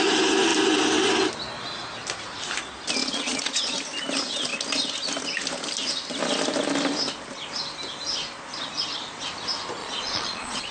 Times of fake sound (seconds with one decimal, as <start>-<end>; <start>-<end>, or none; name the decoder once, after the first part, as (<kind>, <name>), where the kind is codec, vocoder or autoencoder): 3.0-3.7 (vocoder, Vocos); 9.8-10.7